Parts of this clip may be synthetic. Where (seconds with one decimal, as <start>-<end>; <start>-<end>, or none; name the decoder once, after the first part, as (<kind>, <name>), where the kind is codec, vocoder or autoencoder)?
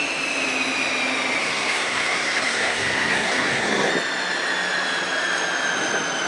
1.4-3.9 (codec, SNAC)